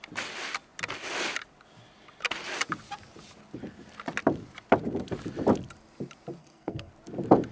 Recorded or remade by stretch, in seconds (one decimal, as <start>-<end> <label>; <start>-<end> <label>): 0.0-6.4 recorded; 6.4-6.9 remade; 6.9-7.5 recorded